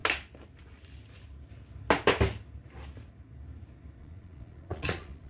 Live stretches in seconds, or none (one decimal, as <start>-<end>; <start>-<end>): 0.0-4.0